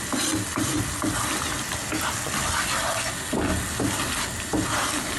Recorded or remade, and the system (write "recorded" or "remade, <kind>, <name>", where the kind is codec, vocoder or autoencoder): recorded